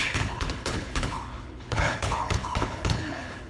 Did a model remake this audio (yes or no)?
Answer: yes